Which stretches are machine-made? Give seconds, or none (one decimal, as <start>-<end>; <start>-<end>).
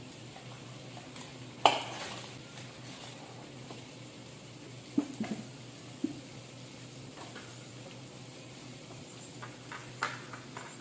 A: none